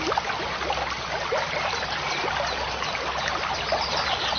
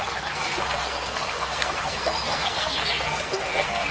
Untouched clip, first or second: first